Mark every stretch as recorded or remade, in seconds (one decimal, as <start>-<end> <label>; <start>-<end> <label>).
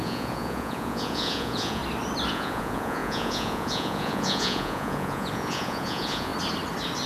0.0-1.8 remade; 1.8-2.3 recorded; 2.3-6.3 remade; 6.3-7.1 recorded